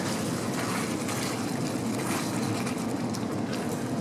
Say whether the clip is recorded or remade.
recorded